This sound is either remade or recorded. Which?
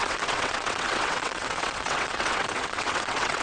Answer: remade